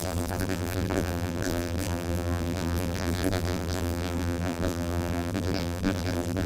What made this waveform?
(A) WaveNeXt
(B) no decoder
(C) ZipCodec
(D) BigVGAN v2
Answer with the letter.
D